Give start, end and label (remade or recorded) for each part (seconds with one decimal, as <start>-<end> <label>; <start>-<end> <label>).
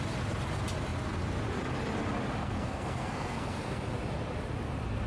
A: 0.0-2.4 recorded; 2.4-3.8 remade; 3.8-5.1 recorded